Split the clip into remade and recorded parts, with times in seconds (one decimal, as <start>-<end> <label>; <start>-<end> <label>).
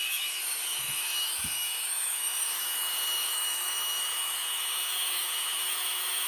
0.0-6.3 remade